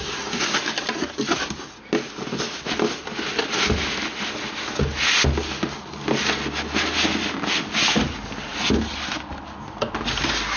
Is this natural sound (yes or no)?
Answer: yes